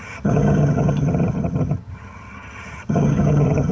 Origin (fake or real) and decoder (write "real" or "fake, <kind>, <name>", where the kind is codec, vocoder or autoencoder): fake, vocoder, HiFi-GAN